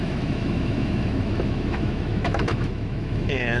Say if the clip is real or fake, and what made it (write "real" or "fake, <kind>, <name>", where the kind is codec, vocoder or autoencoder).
fake, autoencoder, DAC-VAE